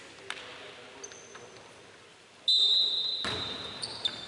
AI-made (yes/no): no